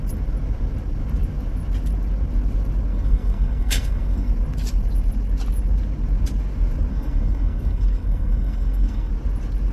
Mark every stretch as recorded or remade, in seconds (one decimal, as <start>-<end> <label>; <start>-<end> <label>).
0.0-2.9 recorded; 2.9-4.3 remade; 4.3-6.9 recorded; 6.9-9.1 remade; 9.1-9.7 recorded